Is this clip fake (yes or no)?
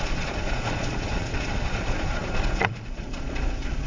yes